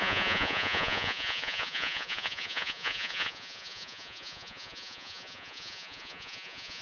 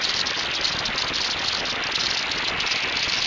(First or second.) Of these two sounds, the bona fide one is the second